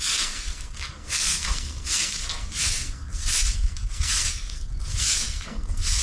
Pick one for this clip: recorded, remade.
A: remade